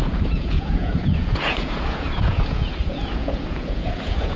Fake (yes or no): yes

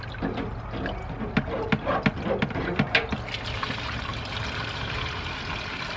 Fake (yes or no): no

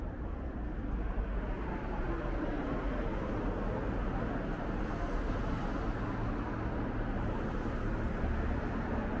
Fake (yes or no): no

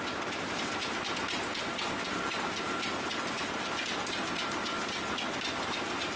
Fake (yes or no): no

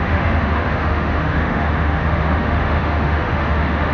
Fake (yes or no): yes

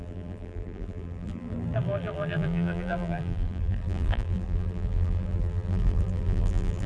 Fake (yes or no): yes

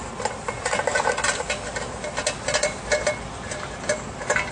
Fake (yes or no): no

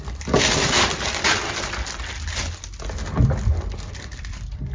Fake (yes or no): no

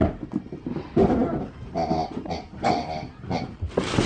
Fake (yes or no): no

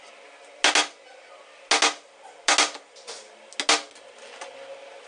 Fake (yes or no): no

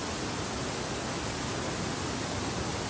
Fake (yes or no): no